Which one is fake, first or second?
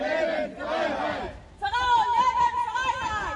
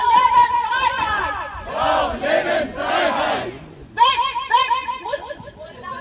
second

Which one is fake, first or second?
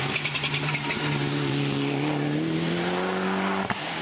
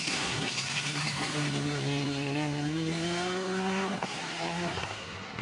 second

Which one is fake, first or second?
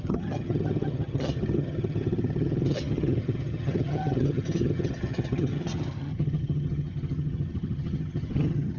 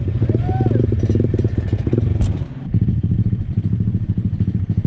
first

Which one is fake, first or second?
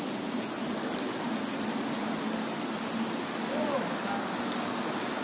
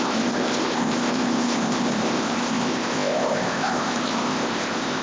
second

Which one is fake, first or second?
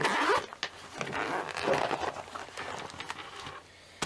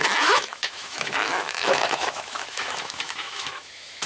second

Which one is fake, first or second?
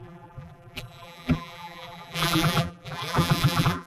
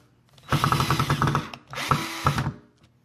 first